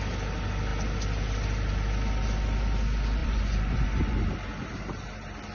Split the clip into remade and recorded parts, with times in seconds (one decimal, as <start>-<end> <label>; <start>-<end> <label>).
0.0-3.2 recorded; 3.2-4.2 remade; 4.2-5.5 recorded